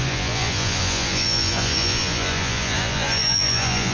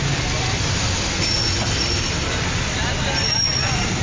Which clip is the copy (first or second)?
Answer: first